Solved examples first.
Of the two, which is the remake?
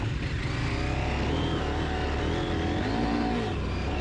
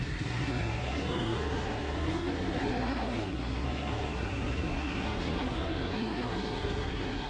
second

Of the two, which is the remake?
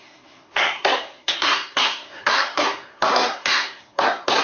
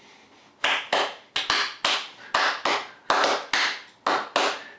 first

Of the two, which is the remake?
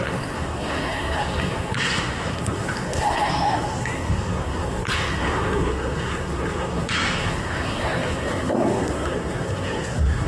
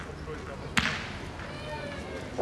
first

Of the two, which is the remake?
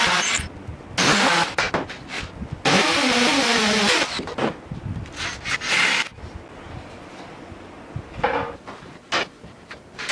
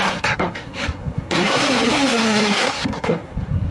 second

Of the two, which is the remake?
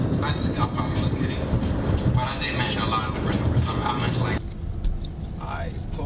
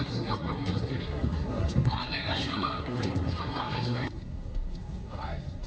second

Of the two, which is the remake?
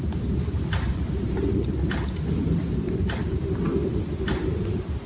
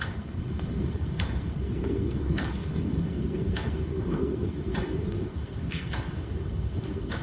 second